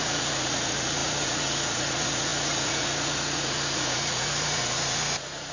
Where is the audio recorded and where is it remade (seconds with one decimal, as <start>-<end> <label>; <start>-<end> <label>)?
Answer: 0.0-5.5 remade